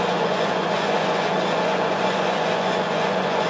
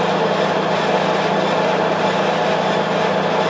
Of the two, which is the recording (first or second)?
second